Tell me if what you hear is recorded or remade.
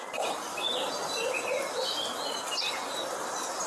recorded